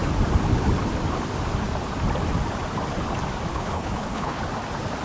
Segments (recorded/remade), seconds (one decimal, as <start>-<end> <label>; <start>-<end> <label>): 0.0-3.5 recorded; 3.5-4.4 remade; 4.4-5.0 recorded